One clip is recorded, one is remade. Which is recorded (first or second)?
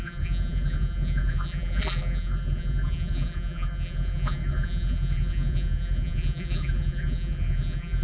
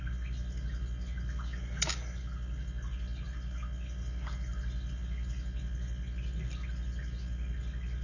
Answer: second